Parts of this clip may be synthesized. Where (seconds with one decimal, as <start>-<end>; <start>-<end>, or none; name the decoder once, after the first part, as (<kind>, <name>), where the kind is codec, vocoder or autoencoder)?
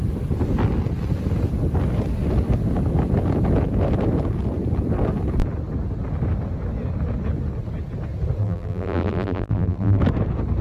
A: 8.4-10.0 (vocoder, BigVGAN v2)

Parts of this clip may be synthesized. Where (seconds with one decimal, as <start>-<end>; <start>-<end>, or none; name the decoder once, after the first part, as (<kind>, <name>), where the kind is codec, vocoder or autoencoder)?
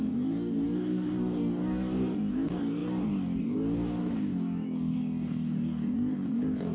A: 0.0-6.7 (codec, DAC)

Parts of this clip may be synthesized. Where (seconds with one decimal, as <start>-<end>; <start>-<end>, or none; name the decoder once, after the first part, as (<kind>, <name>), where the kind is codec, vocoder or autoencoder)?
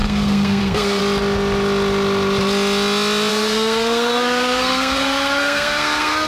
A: 0.0-1.0 (codec, SNAC); 3.3-6.3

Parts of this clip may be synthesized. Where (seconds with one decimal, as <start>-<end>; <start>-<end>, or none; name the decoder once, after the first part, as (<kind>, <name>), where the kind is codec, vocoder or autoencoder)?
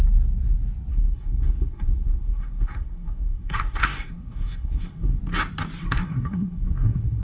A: 0.9-5.2 (codec, SNAC); 5.8-7.2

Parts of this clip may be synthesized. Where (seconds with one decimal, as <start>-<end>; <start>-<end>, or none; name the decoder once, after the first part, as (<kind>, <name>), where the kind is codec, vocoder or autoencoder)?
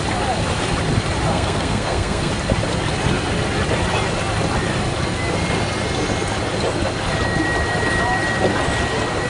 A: 1.3-2.3 (codec, SNAC)